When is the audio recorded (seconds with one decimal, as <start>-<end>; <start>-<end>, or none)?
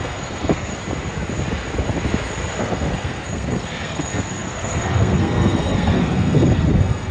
0.7-2.6